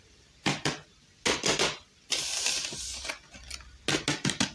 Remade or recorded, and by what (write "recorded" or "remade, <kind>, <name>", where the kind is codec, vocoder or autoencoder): recorded